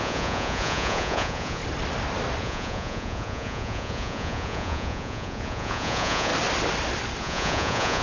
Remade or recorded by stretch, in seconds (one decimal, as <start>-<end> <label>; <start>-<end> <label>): 0.0-1.6 remade; 1.6-2.4 recorded; 2.4-6.3 remade; 6.3-7.2 recorded; 7.2-8.0 remade